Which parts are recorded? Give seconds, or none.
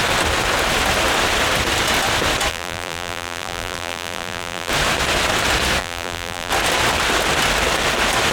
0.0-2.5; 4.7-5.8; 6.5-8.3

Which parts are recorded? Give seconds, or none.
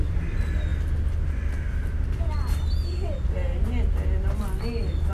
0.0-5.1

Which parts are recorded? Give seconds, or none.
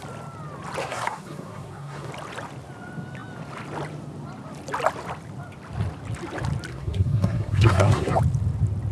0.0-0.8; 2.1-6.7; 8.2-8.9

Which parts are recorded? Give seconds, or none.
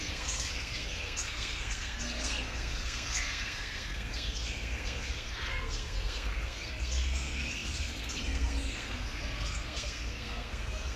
none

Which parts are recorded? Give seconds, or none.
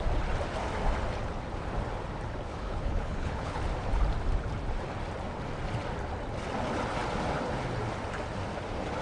0.0-2.5; 3.6-9.0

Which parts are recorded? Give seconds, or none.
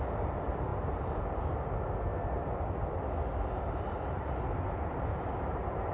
0.0-0.7; 1.4-5.9